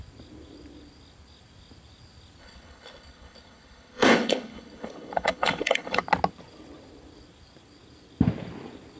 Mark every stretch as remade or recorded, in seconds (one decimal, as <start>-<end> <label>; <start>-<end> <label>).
0.0-2.4 recorded; 2.4-6.0 remade; 6.0-9.0 recorded